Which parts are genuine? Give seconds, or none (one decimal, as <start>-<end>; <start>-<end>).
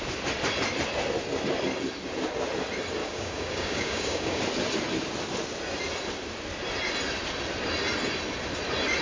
0.0-3.0; 4.4-9.0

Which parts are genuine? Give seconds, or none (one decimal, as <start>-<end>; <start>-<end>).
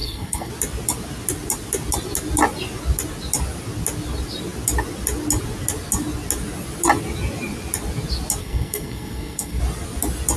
0.5-8.4; 9.6-10.4